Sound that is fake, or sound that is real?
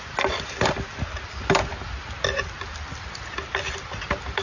real